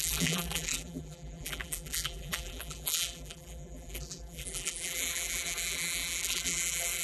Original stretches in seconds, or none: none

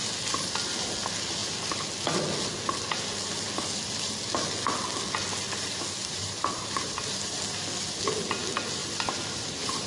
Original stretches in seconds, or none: 0.0-6.0; 7.4-8.8

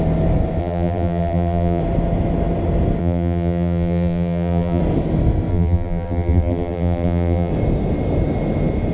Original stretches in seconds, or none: 0.0-0.6; 1.8-3.0; 4.8-5.5; 7.5-8.9

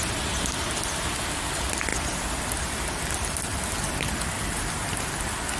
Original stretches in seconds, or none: 0.0-3.5; 4.1-5.6

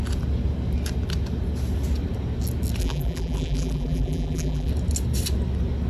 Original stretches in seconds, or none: 0.0-2.8; 4.7-5.9

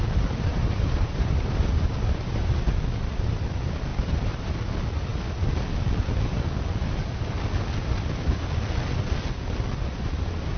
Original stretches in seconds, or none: 0.0-0.5; 2.5-3.9; 4.5-10.6

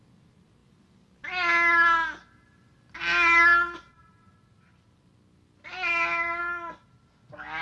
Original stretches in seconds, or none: 0.0-7.6

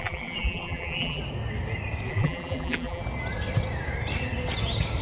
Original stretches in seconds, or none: 1.2-2.1; 3.0-5.0